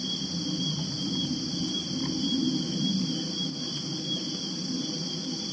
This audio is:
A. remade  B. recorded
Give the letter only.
B